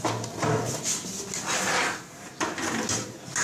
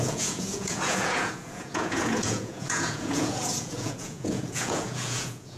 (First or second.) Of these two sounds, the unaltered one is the first